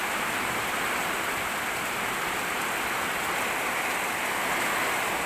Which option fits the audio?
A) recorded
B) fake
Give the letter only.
A